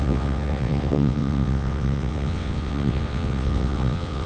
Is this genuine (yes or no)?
no